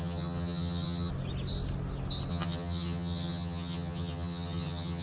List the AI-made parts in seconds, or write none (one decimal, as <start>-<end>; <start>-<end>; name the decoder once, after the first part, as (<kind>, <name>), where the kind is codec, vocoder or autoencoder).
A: 0.0-1.1 (vocoder, HiFi-GAN); 2.3-5.0